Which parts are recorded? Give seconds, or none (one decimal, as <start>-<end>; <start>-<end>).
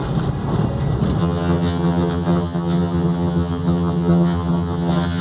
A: 0.0-1.2